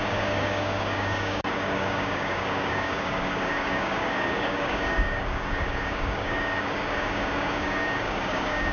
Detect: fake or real fake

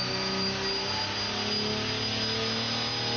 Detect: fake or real real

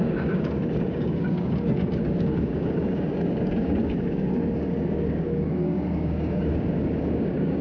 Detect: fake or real fake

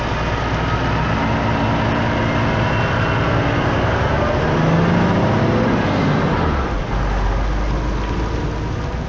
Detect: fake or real real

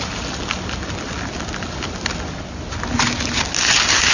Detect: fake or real real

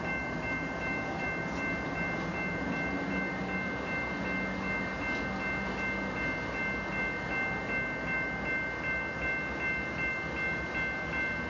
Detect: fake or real real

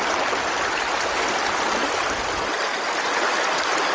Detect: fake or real real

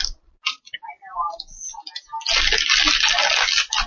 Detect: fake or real real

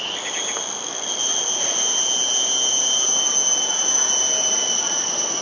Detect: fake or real real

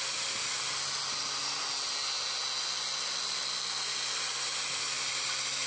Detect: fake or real real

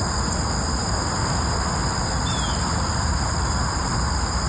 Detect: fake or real real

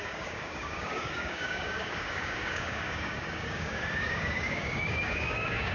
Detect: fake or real fake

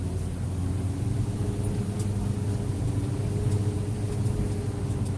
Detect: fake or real real